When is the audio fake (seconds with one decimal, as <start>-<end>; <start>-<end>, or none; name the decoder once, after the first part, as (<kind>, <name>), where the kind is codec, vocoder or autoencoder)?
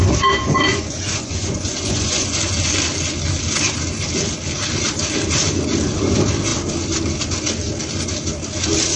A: 0.7-2.4 (vocoder, Vocos)